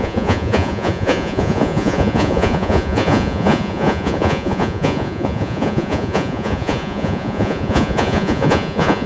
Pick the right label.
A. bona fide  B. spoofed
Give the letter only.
B